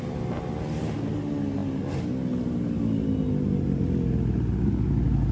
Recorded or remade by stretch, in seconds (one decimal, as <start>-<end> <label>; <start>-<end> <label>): 0.0-5.3 recorded